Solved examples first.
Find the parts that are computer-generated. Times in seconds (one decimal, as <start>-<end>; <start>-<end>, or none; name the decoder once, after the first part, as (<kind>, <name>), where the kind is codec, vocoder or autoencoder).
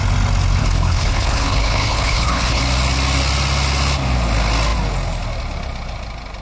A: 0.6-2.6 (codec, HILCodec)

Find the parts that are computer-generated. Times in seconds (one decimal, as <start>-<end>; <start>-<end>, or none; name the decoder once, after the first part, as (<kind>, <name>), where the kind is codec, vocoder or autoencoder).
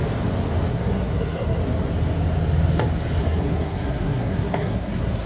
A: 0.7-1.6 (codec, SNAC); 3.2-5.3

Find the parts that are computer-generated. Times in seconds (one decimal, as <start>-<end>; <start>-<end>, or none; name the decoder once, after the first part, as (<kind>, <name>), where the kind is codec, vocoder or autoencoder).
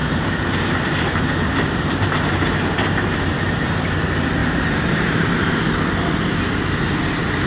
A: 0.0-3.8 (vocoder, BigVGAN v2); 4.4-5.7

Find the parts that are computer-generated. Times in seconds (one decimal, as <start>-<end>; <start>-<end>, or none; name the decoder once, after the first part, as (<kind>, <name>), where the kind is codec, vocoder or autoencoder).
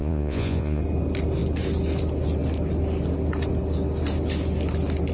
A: 0.0-0.8 (vocoder, Vocos)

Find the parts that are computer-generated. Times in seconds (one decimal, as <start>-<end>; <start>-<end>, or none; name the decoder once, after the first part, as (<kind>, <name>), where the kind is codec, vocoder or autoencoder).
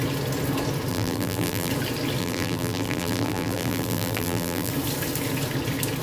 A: 0.9-1.7 (vocoder, BigVGAN v2); 2.2-4.7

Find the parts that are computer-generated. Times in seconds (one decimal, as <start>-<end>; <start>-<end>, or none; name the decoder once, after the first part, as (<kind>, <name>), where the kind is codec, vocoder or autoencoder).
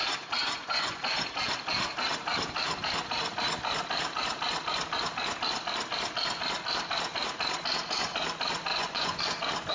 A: 0.4-1.0 (vocoder, Vocos); 8.7-9.2